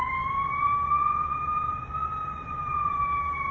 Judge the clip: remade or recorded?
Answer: remade